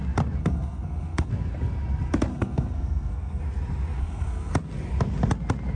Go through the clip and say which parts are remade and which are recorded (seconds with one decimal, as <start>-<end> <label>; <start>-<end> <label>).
0.0-0.4 recorded; 0.4-1.3 remade; 1.3-2.3 recorded; 2.3-3.4 remade; 3.4-4.0 recorded; 4.0-4.5 remade; 4.5-5.8 recorded